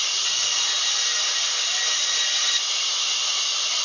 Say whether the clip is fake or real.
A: real